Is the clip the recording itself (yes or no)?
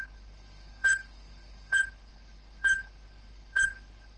no